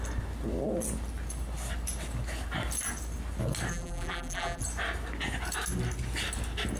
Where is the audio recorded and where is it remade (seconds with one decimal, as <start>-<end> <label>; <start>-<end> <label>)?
0.0-3.7 recorded; 3.7-4.6 remade; 4.6-6.8 recorded